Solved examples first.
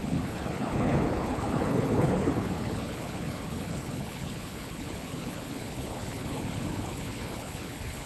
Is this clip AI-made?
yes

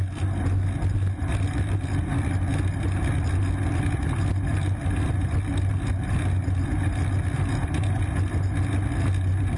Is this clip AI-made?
no